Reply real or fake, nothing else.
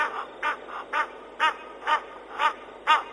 real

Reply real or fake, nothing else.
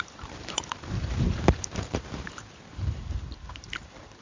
fake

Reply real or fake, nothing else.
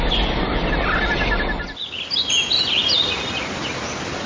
real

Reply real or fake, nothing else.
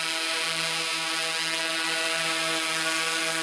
real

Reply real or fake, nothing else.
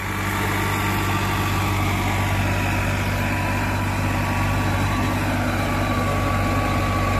real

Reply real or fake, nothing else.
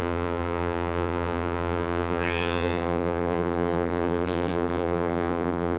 fake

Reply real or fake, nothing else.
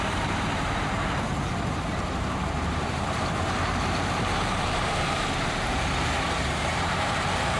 fake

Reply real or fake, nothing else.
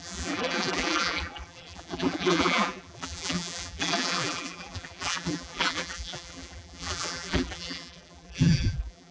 fake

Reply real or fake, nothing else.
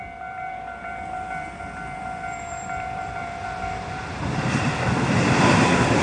fake